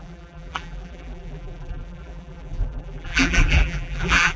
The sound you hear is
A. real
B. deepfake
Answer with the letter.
B